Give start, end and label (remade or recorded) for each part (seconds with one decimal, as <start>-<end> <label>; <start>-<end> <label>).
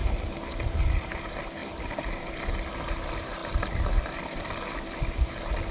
0.0-1.1 remade; 1.1-1.6 recorded; 1.6-2.2 remade; 2.2-5.7 recorded